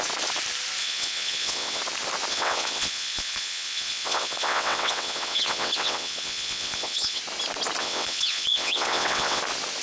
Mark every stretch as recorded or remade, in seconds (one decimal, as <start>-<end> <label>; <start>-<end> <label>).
0.0-0.8 recorded; 0.8-1.8 remade; 1.8-2.3 recorded; 2.3-7.2 remade; 7.2-7.8 recorded; 7.8-9.4 remade; 9.4-9.8 recorded